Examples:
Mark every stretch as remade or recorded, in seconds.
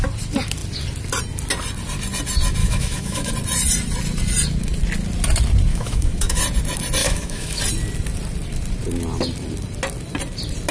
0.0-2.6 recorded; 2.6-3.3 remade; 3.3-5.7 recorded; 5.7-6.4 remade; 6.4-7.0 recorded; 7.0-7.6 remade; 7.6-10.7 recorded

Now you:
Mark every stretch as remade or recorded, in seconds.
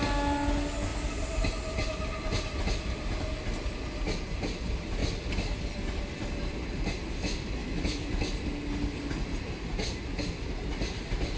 0.0-7.6 recorded; 7.6-8.1 remade; 8.1-11.4 recorded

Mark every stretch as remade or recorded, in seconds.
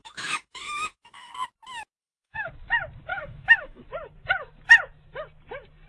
0.0-1.3 remade; 1.3-2.0 recorded; 2.0-2.5 remade; 2.5-3.1 recorded; 3.1-3.8 remade; 3.8-5.9 recorded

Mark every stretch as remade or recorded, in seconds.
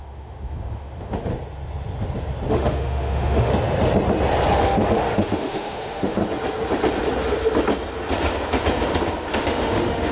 0.0-1.3 remade; 1.3-2.5 recorded; 2.5-3.5 remade; 3.5-4.6 recorded; 4.6-6.2 remade; 6.2-9.3 recorded; 9.3-10.1 remade